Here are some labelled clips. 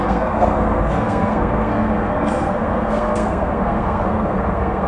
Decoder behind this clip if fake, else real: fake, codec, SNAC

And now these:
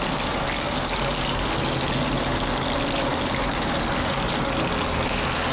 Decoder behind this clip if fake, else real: real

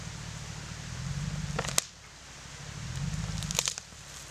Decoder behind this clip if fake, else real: real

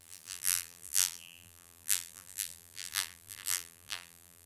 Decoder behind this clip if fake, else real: fake, vocoder, BigVGAN v2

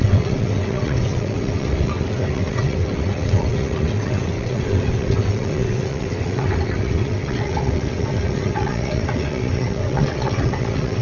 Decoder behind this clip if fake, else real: fake, vocoder, WaveNeXt